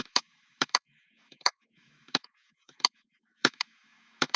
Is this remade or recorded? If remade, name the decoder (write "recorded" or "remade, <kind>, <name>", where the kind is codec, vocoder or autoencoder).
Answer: remade, autoencoder, DAC-VAE